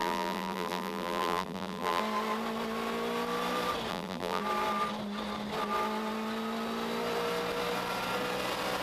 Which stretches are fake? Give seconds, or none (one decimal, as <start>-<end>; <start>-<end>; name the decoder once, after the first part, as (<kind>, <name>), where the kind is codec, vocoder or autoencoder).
0.0-2.0 (vocoder, BigVGAN v2); 3.9-4.4